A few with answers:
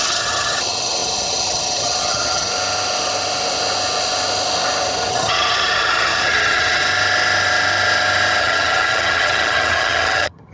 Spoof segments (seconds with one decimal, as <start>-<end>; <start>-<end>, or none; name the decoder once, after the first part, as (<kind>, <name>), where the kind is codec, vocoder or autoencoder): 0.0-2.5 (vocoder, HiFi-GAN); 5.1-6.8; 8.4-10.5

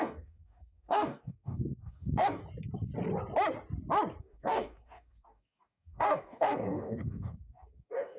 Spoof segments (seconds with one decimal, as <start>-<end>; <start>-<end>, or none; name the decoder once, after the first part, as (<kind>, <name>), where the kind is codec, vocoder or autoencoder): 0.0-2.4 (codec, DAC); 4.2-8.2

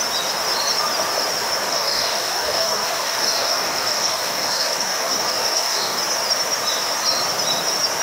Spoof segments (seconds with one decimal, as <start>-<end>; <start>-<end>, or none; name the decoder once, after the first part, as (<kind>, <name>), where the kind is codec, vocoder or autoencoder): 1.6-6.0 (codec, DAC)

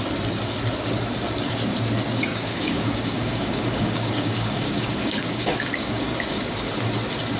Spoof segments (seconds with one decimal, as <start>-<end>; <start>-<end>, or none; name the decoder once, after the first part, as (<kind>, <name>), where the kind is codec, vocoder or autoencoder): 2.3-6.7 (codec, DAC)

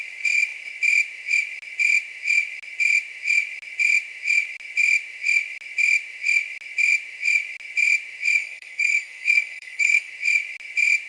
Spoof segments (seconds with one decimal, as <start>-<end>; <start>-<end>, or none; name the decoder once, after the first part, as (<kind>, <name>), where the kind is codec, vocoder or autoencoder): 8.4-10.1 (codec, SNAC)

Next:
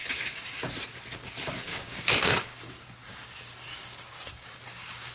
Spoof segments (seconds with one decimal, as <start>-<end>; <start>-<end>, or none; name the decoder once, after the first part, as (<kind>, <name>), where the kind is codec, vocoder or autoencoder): 0.0-0.7 (codec, DAC); 1.7-5.1